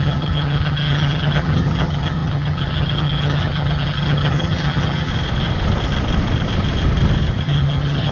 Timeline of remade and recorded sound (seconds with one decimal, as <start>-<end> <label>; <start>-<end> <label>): 0.0-5.1 remade; 5.1-7.4 recorded; 7.4-8.1 remade